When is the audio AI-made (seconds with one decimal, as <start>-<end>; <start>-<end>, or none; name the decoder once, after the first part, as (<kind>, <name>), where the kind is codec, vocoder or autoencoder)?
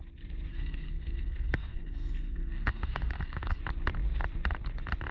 0.5-3.6 (codec, SNAC)